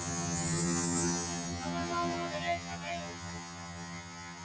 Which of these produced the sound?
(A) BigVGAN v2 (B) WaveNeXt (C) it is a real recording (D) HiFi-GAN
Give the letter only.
D